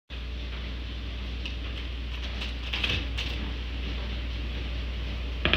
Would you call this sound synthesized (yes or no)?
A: no